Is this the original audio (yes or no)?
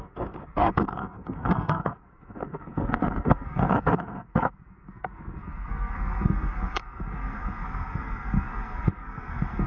no